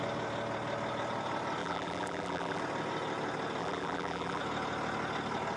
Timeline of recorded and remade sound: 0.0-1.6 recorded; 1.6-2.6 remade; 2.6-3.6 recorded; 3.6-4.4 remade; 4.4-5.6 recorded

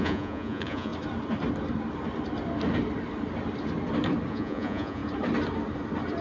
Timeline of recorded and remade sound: 0.0-0.9 remade; 0.9-4.3 recorded; 4.3-5.0 remade; 5.0-6.2 recorded

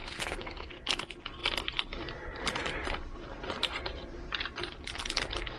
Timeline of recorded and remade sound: 0.0-0.7 remade; 0.7-5.6 recorded

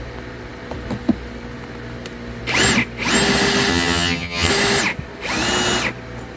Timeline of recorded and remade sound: 0.0-3.7 recorded; 3.7-4.5 remade; 4.5-6.4 recorded

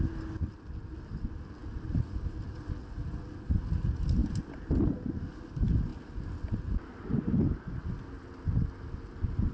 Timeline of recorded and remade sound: 0.0-9.5 recorded

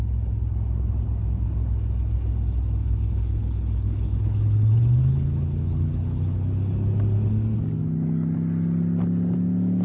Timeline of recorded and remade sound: 0.0-2.8 recorded; 2.8-6.4 remade; 6.4-9.8 recorded

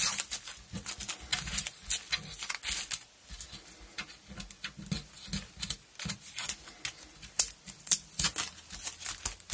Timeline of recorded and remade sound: 0.0-9.5 recorded

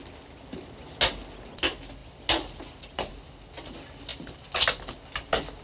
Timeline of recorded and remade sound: 0.0-5.6 recorded